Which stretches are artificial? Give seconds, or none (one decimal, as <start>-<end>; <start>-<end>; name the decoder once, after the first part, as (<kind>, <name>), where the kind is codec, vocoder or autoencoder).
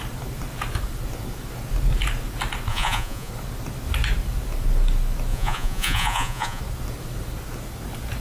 2.7-3.3 (vocoder, Vocos); 5.3-6.6